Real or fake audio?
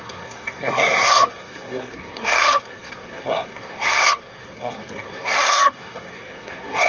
fake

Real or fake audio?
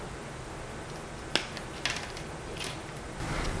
real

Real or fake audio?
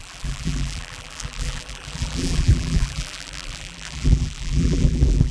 fake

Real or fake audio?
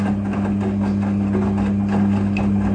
real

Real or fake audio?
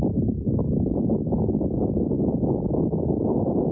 real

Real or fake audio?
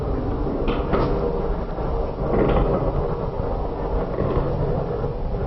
real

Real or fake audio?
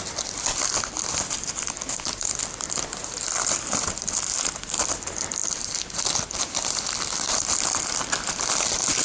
fake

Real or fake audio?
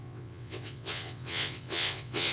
fake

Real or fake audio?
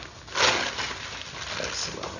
real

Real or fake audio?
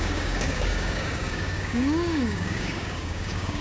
fake